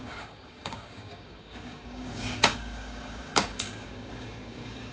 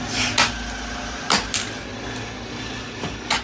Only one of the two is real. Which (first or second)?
second